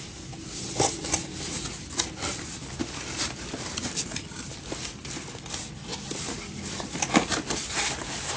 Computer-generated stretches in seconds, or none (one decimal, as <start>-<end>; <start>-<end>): none